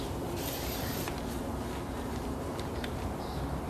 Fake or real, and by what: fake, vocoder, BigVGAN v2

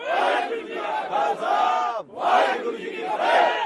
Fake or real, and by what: real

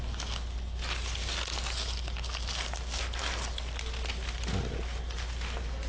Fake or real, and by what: real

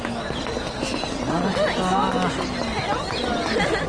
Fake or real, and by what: real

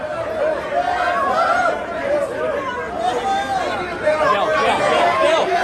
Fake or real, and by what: real